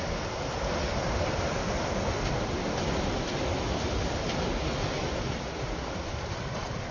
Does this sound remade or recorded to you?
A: recorded